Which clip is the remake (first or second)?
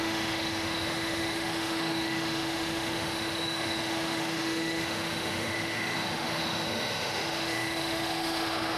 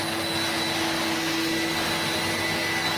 first